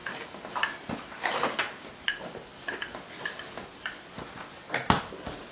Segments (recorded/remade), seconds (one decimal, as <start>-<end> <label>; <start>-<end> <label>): 0.0-5.5 recorded